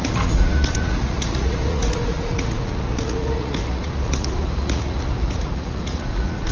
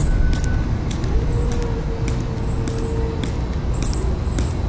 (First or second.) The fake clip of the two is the first